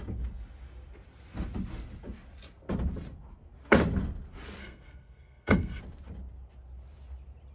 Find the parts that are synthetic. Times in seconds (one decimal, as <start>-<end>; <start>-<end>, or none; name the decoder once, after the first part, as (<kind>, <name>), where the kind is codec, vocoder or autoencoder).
4.6-5.8 (codec, SNAC)

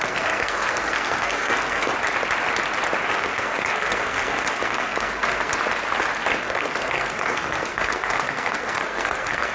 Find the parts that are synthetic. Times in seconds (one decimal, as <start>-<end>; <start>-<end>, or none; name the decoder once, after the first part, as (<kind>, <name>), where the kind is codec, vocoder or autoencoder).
0.0-1.9 (codec, SNAC); 3.1-5.5; 6.4-9.5

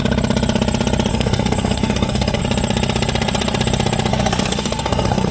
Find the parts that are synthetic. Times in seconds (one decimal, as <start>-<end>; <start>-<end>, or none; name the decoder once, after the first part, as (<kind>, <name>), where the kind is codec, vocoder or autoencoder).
1.1-2.4 (codec, SNAC); 4.1-5.3

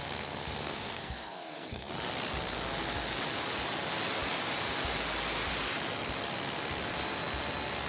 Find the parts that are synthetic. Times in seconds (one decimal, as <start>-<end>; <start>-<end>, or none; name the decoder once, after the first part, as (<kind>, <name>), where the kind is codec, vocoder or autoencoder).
0.0-1.9 (codec, SNAC)